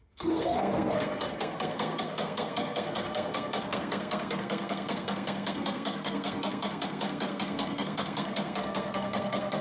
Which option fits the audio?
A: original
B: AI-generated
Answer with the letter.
B